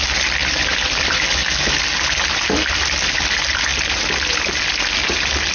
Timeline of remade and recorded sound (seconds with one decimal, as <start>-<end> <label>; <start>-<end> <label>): 0.0-5.5 recorded